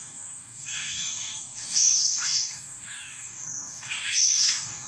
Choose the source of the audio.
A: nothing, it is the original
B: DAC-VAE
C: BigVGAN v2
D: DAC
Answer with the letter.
D